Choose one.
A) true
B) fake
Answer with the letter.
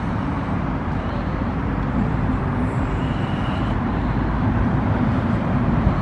B